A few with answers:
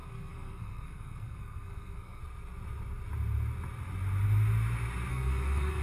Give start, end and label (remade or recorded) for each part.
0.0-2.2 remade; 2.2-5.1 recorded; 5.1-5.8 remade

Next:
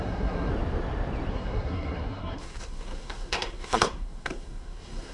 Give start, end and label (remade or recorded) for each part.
0.0-0.5 remade; 0.5-1.3 recorded; 1.3-5.1 remade

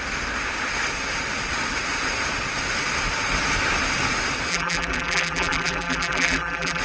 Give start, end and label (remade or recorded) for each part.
0.0-4.5 recorded; 4.5-6.8 remade